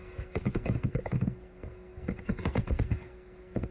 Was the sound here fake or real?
fake